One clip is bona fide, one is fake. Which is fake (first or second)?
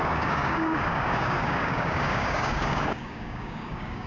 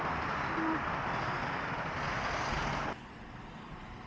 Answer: first